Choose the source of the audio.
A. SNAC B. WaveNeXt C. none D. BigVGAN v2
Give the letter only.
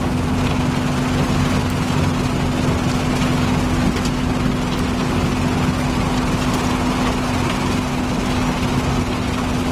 C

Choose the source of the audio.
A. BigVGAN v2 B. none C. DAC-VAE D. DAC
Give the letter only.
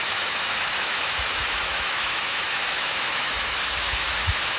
C